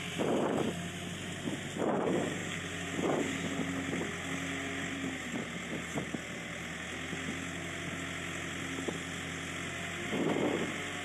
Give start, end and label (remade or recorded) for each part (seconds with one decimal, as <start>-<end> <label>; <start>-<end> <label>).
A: 0.0-11.0 recorded